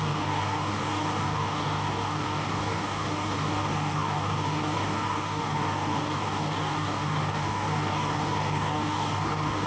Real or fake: fake